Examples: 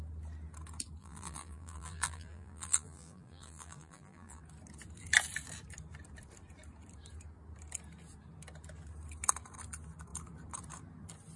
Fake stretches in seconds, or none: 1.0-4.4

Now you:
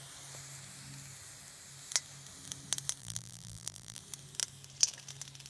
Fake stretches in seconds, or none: 3.0-4.0